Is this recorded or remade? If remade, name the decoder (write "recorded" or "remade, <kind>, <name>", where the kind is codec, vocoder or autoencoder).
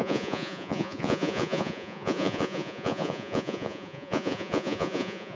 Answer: remade, vocoder, Vocos